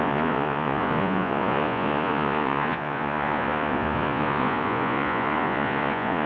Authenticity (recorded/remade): remade